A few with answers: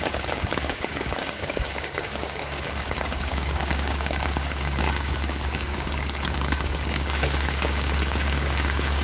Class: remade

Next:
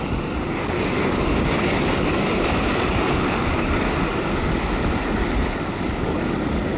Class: remade